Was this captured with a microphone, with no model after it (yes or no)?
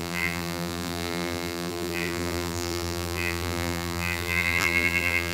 no